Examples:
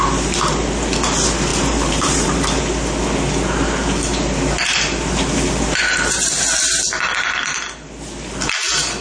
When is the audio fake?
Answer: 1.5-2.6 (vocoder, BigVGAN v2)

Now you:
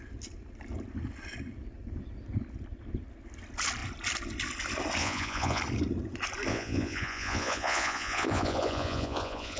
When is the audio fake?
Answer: 5.0-5.6 (vocoder, Vocos); 6.5-9.6

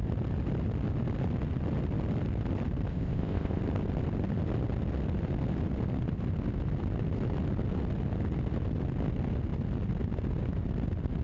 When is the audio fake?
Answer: 2.9-3.6 (codec, ZipCodec)

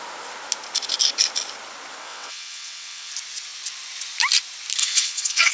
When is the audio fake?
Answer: 2.0-3.1 (vocoder, WaveNeXt); 4.8-5.5